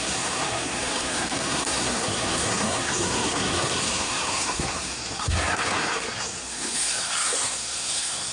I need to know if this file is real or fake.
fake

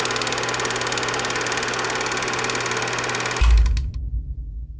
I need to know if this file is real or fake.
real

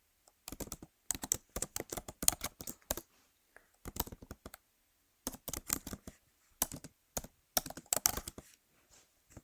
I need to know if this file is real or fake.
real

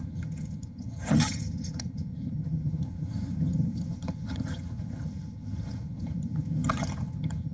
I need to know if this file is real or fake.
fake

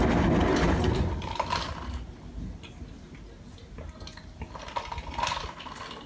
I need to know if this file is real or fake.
real